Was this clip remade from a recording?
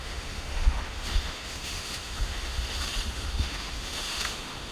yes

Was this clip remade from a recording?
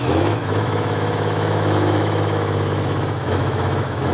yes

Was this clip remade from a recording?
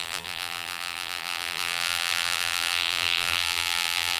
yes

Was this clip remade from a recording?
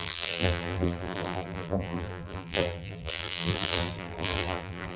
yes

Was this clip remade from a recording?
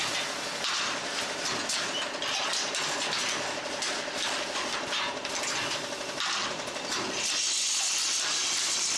no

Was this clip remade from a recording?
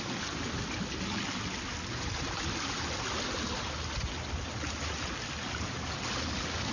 no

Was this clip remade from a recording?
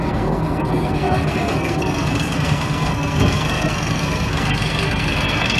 yes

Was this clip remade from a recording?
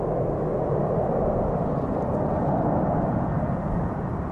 no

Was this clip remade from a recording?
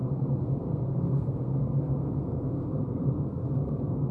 yes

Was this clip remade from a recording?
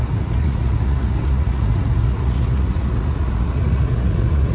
yes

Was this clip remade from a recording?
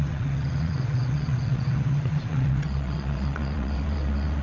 yes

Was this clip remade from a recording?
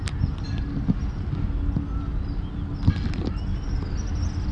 no